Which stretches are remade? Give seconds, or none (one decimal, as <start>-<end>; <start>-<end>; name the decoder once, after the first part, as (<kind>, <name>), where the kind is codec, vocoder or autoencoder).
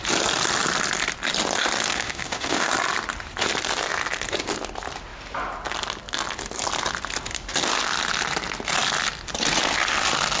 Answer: 1.9-2.7 (autoencoder, DAC-VAE)